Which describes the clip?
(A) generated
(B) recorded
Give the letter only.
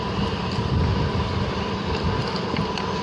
B